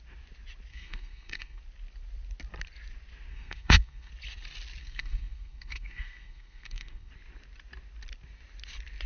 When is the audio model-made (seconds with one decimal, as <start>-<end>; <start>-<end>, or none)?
0.7-1.6; 3.3-4.1; 4.8-7.1